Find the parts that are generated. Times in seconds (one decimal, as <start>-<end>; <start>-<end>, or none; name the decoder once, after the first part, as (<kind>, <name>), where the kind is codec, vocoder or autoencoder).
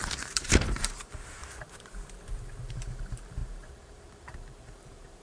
0.0-1.4 (vocoder, BigVGAN v2); 2.7-5.2